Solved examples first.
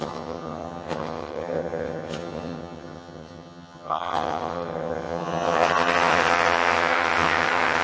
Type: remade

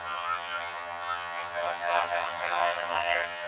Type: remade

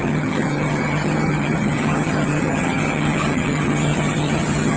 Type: remade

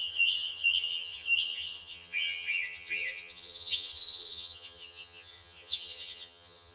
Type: remade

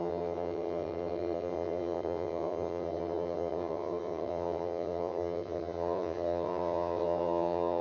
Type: remade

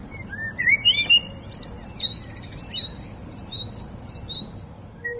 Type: recorded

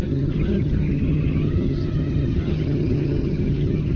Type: remade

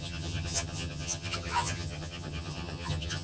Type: remade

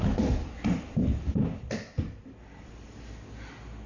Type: recorded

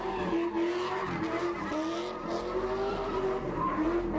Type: recorded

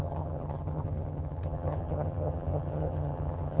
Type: remade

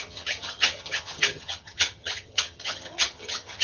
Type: remade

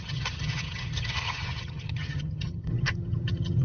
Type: remade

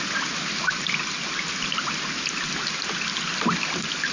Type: recorded